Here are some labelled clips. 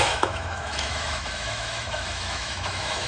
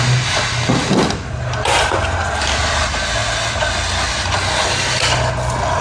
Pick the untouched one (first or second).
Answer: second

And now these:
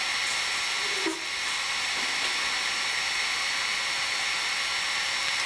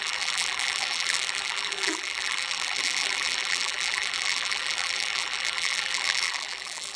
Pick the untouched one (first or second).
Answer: first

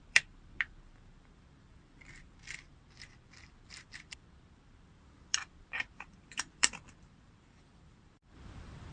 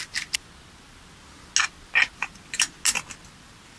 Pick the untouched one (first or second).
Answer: second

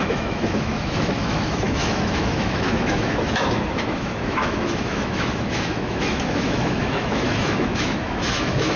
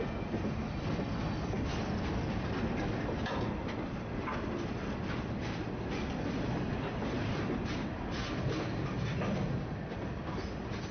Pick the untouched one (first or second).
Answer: second